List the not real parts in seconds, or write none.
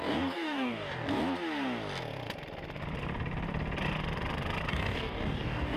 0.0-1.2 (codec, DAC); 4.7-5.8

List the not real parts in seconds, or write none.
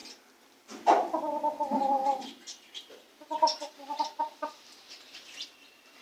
0.0-6.0 (vocoder, BigVGAN v2)